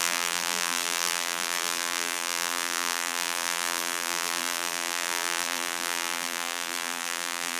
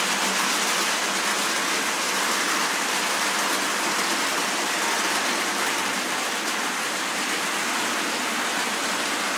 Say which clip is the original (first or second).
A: second